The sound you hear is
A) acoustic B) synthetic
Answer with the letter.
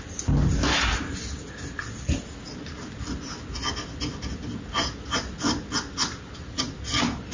A